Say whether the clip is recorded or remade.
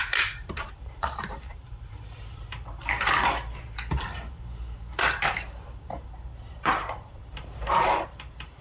remade